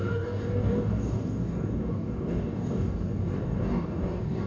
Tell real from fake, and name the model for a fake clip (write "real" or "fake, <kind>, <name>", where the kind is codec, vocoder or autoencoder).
fake, codec, DAC